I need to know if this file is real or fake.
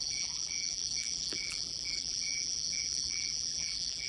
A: fake